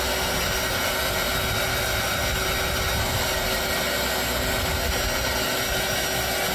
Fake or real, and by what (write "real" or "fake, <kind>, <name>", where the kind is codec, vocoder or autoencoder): real